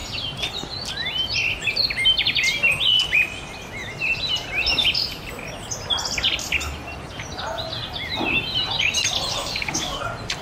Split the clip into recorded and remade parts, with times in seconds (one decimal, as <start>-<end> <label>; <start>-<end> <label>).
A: 0.0-9.4 recorded; 9.4-10.0 remade; 10.0-10.4 recorded